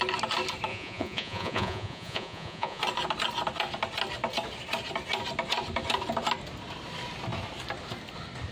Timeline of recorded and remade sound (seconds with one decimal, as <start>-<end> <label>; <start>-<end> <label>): 0.0-0.7 recorded; 0.7-2.8 remade; 2.8-8.5 recorded